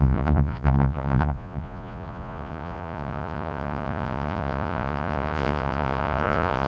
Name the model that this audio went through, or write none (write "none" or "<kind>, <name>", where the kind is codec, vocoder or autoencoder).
vocoder, Vocos